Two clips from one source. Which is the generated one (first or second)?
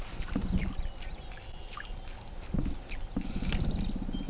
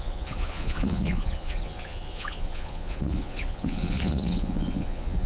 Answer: second